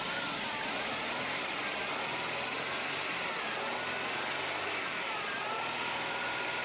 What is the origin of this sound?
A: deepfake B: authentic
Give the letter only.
B